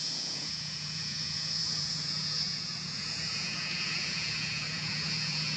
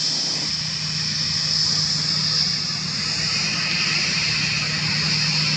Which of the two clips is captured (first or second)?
second